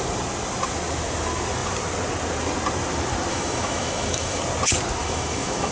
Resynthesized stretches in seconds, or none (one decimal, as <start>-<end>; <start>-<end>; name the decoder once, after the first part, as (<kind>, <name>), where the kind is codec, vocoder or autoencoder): 3.3-4.4 (autoencoder, DAC-VAE); 5.0-5.7